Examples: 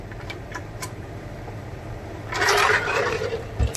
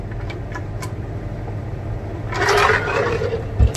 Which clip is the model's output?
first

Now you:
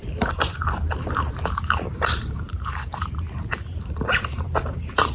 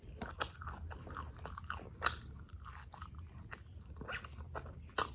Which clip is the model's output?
first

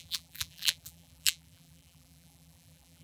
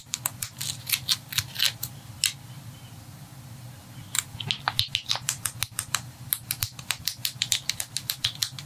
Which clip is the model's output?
first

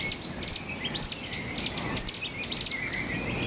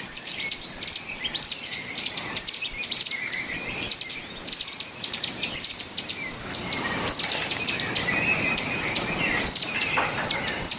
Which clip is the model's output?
second